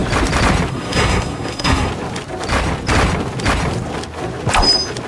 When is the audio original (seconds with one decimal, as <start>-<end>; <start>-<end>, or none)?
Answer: 0.0-0.7; 1.9-5.1